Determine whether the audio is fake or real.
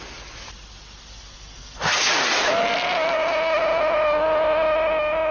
real